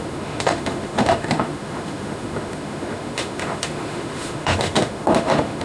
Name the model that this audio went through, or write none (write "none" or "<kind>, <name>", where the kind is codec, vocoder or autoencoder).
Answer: autoencoder, DAC-VAE